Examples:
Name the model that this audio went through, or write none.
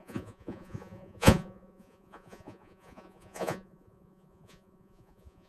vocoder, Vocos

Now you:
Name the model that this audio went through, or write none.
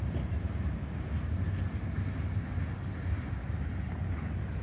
none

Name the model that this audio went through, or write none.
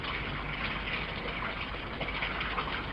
none